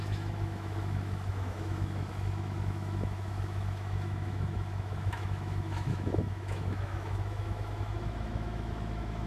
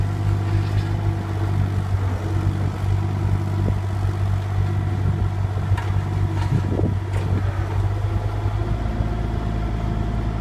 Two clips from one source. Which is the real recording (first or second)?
second